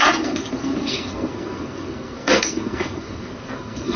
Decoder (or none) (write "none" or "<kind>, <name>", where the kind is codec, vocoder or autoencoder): codec, SNAC